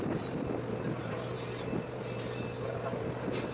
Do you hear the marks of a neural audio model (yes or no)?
no